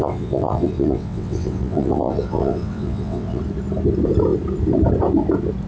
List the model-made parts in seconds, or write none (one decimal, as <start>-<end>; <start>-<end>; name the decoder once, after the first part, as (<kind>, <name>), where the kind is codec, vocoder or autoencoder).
0.0-3.4 (vocoder, WaveNeXt)